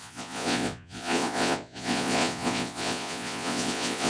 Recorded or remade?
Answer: remade